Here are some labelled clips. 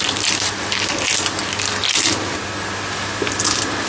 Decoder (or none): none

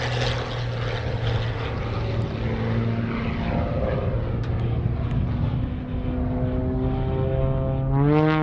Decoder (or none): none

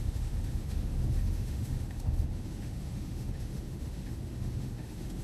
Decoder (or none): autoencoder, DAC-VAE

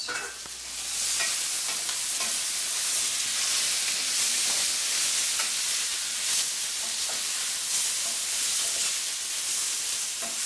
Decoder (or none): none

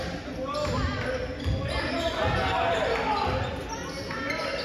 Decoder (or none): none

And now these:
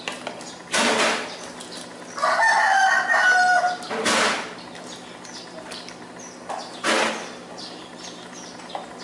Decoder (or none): none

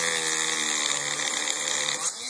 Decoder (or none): none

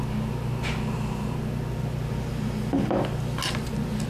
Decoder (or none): none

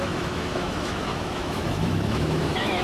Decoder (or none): autoencoder, DAC-VAE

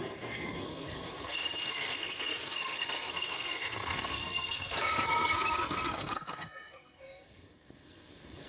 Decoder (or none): codec, SNAC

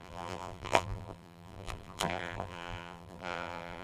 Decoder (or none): vocoder, BigVGAN v2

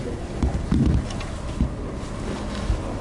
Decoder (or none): none